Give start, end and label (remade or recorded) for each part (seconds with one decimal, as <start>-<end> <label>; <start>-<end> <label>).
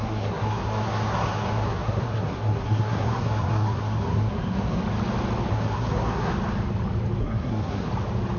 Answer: 0.0-4.8 remade; 4.8-5.5 recorded; 5.5-6.3 remade; 6.3-7.2 recorded; 7.2-7.9 remade; 7.9-8.4 recorded